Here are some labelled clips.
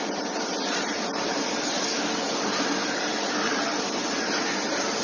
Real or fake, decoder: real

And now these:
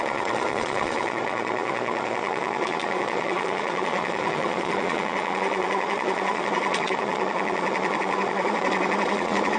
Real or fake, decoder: fake, vocoder, Vocos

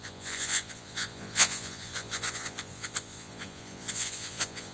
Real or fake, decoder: fake, vocoder, Vocos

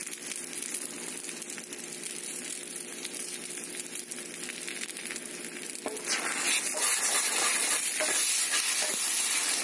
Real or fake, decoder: real